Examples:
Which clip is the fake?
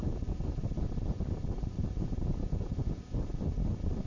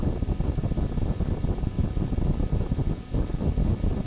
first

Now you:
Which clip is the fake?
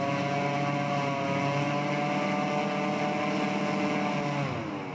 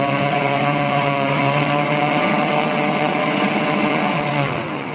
second